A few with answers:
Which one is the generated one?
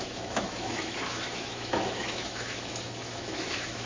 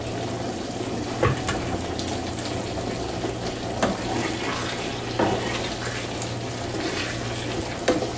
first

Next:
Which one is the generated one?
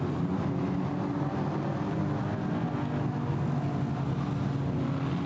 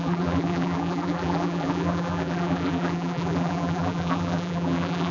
second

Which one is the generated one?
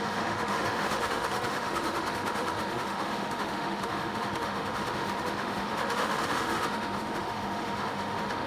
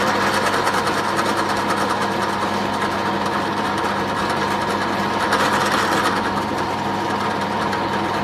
first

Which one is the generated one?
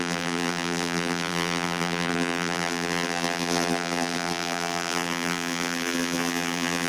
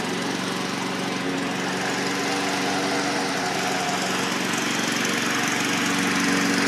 first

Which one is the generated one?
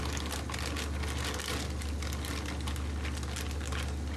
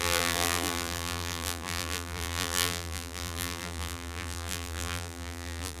second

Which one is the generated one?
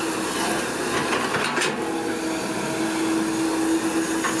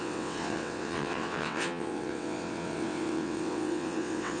second